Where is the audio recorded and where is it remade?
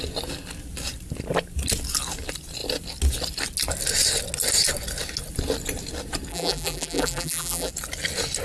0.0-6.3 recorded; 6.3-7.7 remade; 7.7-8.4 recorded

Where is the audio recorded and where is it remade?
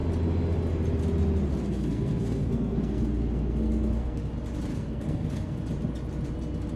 0.0-1.6 recorded; 1.6-4.3 remade; 4.3-4.7 recorded; 4.7-5.6 remade; 5.6-6.8 recorded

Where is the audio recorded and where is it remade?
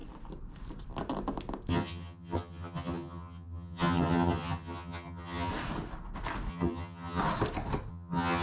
0.0-1.7 recorded; 1.7-5.5 remade; 5.5-6.5 recorded; 6.5-7.2 remade; 7.2-7.9 recorded; 7.9-8.4 remade